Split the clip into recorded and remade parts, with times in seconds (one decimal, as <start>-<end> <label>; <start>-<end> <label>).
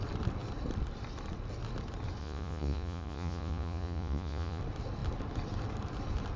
0.0-2.2 recorded; 2.2-4.6 remade; 4.6-6.4 recorded